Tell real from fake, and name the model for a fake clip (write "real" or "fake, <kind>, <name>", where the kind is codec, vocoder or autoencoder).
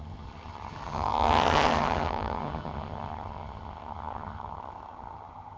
fake, vocoder, HiFi-GAN